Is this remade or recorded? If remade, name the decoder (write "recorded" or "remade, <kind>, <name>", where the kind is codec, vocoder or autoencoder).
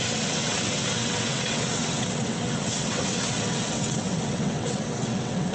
remade, vocoder, WaveNeXt